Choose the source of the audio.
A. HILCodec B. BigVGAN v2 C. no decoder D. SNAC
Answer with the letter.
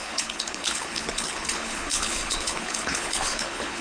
A